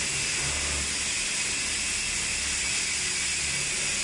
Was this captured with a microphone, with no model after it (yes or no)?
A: yes